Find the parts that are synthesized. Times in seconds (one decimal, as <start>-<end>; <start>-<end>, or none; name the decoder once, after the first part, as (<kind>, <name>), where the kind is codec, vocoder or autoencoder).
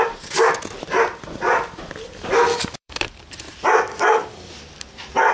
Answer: 2.5-3.0 (codec, DAC); 3.9-4.5